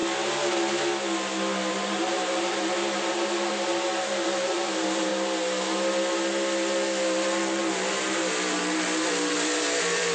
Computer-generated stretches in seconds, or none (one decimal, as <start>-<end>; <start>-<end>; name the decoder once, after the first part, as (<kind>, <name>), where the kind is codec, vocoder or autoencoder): 1.7-5.1 (vocoder, BigVGAN v2); 7.6-10.1